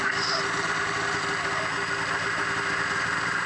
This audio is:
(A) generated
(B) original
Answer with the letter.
B